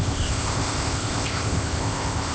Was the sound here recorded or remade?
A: remade